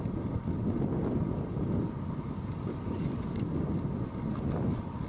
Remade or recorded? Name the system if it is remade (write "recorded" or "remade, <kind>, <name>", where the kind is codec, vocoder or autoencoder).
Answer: recorded